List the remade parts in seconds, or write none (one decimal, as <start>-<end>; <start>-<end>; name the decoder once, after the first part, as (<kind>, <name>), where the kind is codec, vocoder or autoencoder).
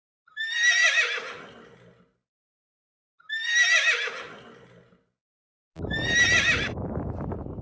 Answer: none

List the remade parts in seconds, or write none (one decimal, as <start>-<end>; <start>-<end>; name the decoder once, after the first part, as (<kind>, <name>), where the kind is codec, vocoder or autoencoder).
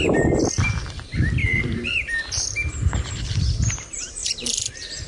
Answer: 1.4-3.8 (vocoder, BigVGAN v2); 4.2-5.1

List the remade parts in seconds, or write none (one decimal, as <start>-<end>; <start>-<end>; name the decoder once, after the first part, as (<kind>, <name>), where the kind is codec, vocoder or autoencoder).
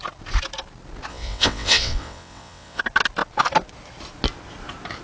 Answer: 1.1-2.8 (vocoder, WaveNeXt)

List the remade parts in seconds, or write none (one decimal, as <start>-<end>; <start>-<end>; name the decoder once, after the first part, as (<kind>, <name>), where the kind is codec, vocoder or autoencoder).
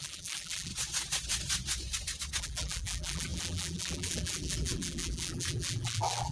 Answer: 0.0-0.7 (vocoder, BigVGAN v2); 2.4-6.3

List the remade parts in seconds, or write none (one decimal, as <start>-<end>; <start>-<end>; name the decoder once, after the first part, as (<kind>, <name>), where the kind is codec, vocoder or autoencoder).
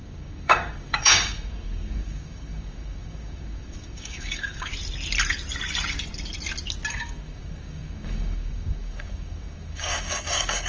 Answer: 0.0-4.7 (codec, DAC); 6.9-10.7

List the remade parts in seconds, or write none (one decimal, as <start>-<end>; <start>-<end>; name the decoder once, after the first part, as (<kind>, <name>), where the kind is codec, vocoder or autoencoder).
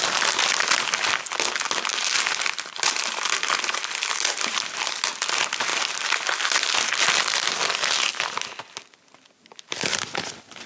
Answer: none